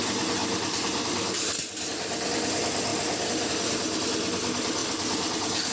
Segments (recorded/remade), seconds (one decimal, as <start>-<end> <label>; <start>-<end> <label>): 0.0-5.7 recorded